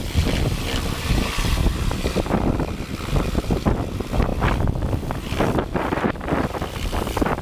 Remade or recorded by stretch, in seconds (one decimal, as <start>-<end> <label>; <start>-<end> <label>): 0.0-1.6 remade; 1.6-3.1 recorded; 3.1-7.4 remade